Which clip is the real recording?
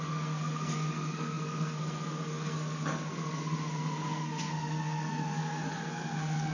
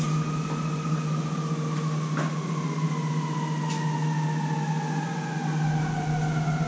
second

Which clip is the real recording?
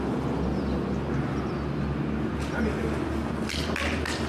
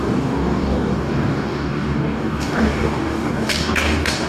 first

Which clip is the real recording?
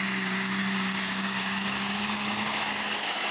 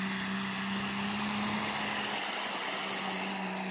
second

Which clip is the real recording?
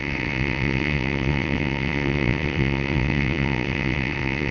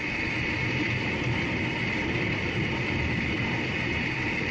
second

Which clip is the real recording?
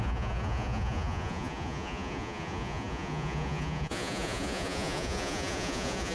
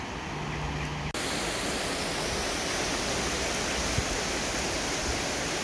second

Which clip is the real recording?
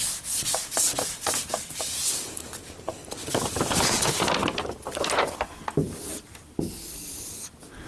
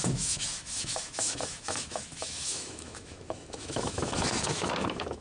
first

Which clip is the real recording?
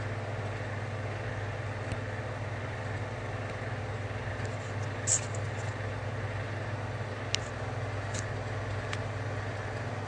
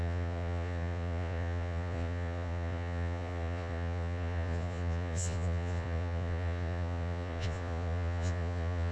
first